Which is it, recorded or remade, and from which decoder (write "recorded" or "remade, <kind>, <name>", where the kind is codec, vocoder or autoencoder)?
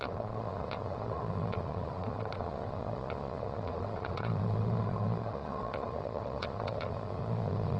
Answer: remade, vocoder, Vocos